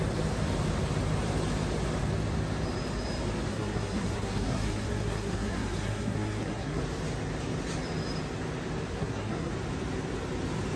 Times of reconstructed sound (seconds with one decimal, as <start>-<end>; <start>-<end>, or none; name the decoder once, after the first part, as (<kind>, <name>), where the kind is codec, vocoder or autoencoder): 3.5-6.8 (codec, SNAC); 8.9-9.5